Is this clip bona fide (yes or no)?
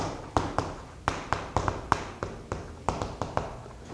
yes